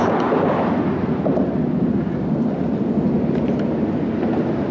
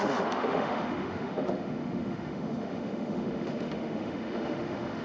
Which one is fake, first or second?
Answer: second